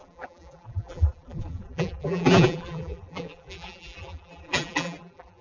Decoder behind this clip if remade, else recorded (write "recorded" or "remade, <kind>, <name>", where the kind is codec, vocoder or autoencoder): remade, vocoder, BigVGAN v2